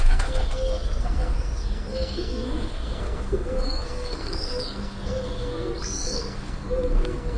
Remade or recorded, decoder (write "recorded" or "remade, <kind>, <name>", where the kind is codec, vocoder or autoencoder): remade, codec, SNAC